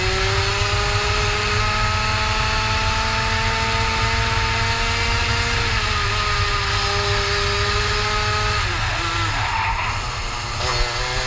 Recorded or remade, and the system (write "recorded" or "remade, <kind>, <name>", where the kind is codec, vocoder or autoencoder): recorded